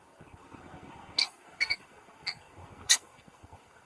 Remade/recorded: remade